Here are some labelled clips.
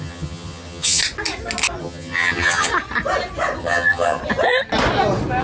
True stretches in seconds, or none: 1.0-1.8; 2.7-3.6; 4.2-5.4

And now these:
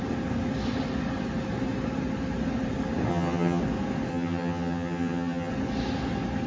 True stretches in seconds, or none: 0.0-3.1; 3.6-4.1; 5.5-6.5